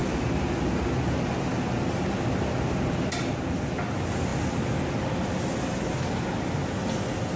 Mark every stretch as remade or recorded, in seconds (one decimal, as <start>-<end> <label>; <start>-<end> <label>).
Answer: 0.0-7.4 recorded